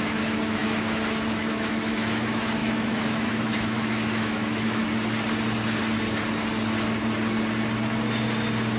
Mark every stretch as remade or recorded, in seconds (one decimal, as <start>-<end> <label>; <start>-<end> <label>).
0.0-4.8 remade; 4.8-8.8 recorded